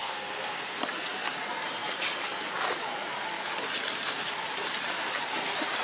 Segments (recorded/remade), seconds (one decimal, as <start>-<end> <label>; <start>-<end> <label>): 0.0-0.8 remade; 0.8-5.8 recorded